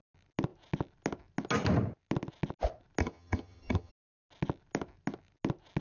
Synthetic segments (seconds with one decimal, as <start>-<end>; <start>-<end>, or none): 3.0-3.9